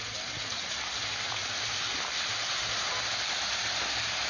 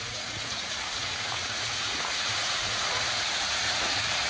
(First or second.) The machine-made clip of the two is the second